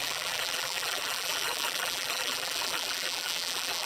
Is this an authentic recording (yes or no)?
no